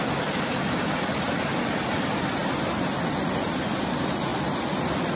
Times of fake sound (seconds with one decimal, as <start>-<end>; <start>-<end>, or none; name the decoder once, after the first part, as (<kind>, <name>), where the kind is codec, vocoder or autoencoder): 4.3-5.2 (vocoder, BigVGAN v2)